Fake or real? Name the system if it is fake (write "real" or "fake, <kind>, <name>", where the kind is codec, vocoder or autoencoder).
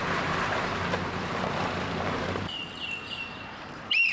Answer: fake, vocoder, BigVGAN v2